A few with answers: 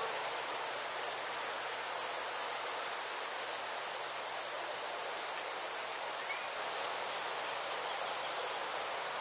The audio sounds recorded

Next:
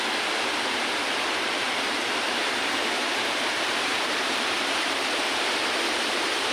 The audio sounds remade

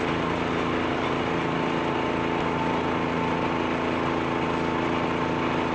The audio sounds recorded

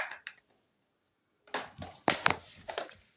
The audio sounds recorded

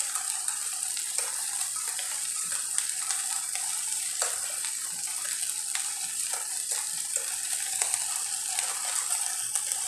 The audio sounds remade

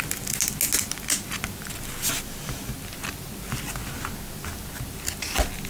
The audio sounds recorded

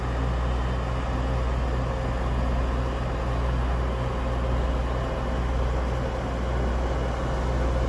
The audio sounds recorded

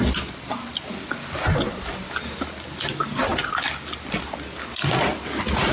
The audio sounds recorded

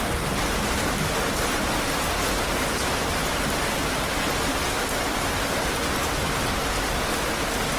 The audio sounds recorded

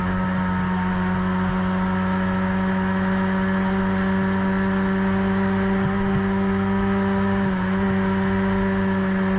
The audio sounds recorded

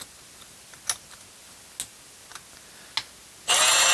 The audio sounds recorded